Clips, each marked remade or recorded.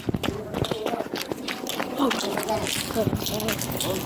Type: recorded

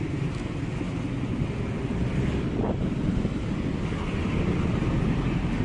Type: recorded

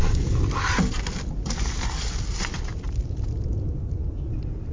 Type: recorded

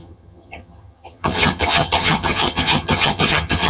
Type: remade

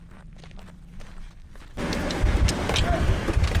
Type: recorded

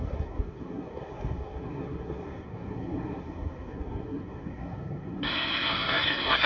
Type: remade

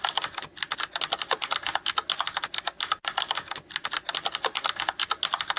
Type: recorded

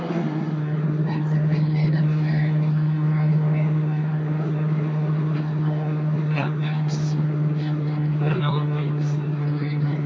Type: remade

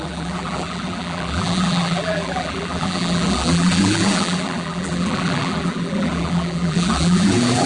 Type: remade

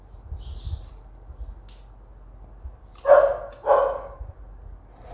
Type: recorded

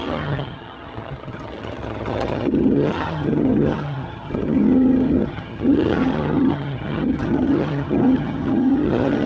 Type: remade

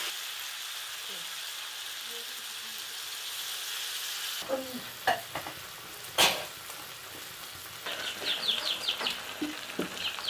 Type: recorded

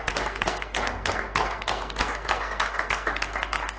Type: remade